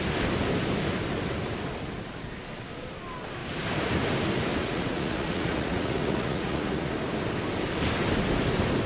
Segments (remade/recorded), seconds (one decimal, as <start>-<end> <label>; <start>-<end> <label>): 0.0-4.6 recorded; 4.6-6.9 remade; 6.9-8.9 recorded